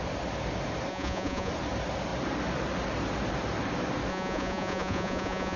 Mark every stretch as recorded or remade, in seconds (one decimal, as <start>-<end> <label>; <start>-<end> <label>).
0.0-0.9 recorded; 0.9-1.5 remade; 1.5-4.1 recorded; 4.1-5.6 remade